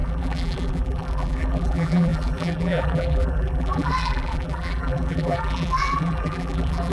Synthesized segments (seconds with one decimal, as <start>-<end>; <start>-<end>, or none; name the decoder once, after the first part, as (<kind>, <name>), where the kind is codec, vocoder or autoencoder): 0.0-6.9 (vocoder, BigVGAN v2)